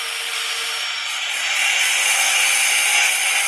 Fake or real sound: real